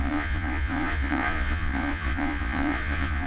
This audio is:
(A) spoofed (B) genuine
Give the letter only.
A